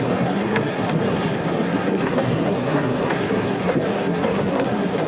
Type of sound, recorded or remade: remade